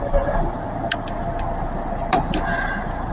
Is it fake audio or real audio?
real